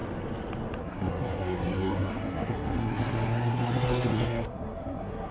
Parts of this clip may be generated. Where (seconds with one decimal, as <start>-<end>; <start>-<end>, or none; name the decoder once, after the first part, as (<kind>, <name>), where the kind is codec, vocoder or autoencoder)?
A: 0.8-5.3 (codec, SNAC)